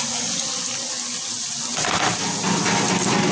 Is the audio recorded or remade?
recorded